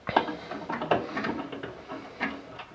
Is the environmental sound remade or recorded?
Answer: recorded